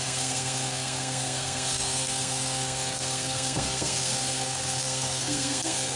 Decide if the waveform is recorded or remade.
remade